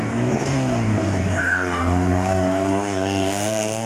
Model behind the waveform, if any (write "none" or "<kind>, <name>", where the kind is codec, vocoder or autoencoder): codec, DAC